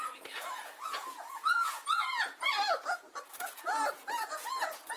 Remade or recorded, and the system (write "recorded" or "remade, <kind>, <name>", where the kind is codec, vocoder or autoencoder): remade, vocoder, Vocos